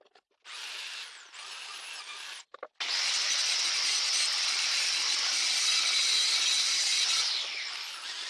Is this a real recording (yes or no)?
yes